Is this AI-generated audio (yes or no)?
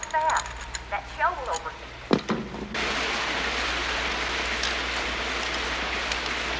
no